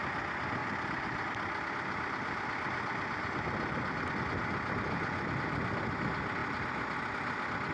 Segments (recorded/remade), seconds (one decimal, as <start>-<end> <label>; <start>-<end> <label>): 0.0-7.7 recorded